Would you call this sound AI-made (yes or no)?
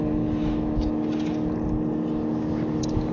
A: no